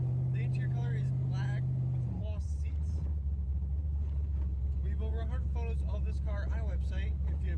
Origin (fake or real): real